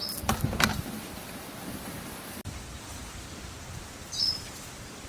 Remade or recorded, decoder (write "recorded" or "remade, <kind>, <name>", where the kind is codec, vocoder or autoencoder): remade, vocoder, BigVGAN v2